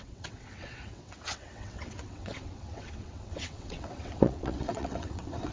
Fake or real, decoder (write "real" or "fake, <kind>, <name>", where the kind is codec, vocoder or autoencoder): fake, vocoder, WaveNeXt